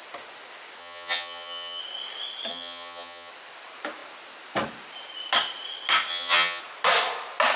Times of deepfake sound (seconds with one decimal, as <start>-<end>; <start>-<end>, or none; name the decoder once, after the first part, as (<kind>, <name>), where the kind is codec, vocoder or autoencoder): 0.8-1.8 (vocoder, HiFi-GAN); 2.5-3.3; 6.1-6.6